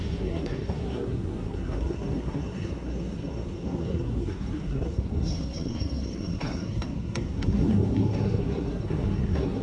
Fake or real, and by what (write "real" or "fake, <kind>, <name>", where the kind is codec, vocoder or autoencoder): fake, codec, SNAC